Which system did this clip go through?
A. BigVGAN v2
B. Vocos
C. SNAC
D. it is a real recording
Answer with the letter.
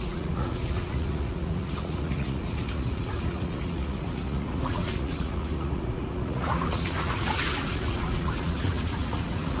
B